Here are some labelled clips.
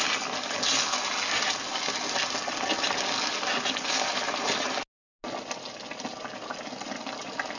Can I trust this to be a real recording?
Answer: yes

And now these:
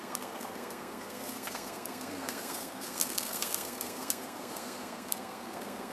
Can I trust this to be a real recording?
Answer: no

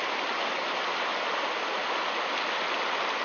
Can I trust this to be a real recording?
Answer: yes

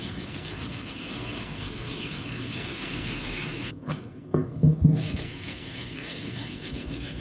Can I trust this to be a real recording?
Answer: no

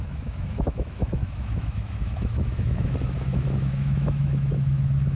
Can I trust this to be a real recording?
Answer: no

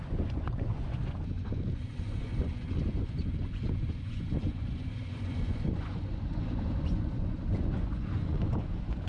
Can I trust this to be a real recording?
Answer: no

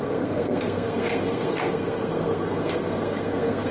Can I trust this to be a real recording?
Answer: no